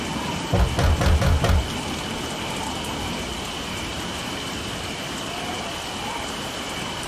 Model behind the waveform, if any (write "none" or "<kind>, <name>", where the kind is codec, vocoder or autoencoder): none